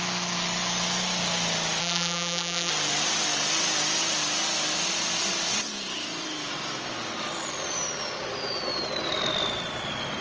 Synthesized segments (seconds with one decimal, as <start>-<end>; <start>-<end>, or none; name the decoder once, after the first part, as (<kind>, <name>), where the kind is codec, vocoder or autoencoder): 1.8-2.7 (vocoder, BigVGAN v2)

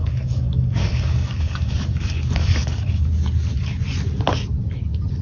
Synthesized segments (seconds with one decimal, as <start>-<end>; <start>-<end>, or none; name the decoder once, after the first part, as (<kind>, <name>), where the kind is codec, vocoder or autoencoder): 0.0-3.1 (codec, DAC)

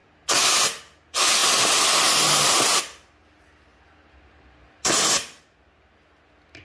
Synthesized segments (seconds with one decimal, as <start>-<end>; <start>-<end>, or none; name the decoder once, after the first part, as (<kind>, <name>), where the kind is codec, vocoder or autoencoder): none

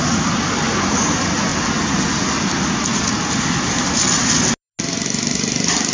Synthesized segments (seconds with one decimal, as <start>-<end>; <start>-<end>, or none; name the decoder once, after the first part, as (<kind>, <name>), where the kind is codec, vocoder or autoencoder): none

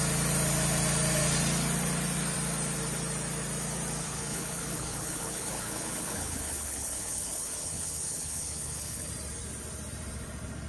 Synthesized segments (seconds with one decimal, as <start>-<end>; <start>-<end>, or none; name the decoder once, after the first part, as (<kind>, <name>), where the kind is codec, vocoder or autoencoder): 4.0-9.1 (codec, HILCodec)

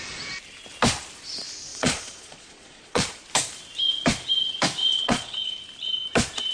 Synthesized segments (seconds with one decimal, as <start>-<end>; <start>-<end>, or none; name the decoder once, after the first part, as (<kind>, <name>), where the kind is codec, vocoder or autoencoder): 1.7-3.2 (vocoder, Vocos); 4.8-5.5